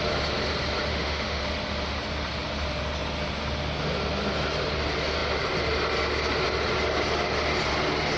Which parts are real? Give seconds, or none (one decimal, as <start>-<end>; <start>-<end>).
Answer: 0.0-0.9; 1.4-8.2